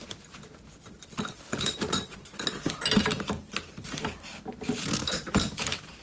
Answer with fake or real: real